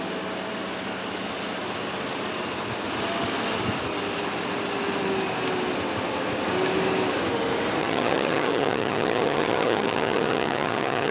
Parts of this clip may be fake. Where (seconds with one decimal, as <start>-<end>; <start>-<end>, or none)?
7.8-11.1